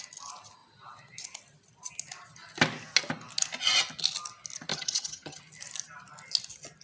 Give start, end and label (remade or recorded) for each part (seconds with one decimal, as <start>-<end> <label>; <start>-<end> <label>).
0.0-4.7 recorded; 4.7-5.4 remade; 5.4-6.8 recorded